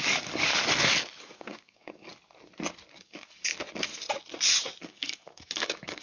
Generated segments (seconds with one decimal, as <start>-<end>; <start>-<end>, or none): 0.0-0.5; 1.2-2.1; 2.9-3.5; 4.8-6.0